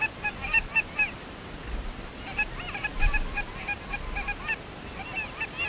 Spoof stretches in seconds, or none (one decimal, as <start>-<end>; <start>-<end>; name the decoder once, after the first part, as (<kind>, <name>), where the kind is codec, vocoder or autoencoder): 0.0-5.7 (vocoder, BigVGAN v2)